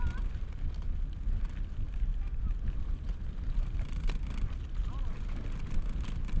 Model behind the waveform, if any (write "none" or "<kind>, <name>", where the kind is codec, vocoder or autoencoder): none